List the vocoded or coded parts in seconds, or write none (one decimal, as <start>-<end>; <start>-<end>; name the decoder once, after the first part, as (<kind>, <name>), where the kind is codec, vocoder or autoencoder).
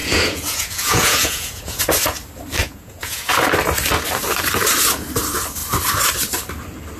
0.0-1.8 (vocoder, Vocos); 2.6-3.3